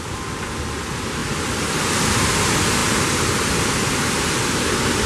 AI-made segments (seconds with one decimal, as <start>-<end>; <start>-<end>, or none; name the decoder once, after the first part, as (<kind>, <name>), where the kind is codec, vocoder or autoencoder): none